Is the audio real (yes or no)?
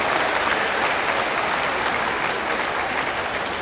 yes